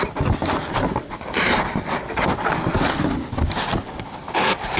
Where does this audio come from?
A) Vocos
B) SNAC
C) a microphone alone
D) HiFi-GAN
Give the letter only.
C